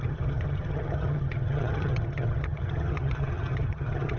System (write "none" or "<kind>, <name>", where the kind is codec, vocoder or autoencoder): vocoder, HiFi-GAN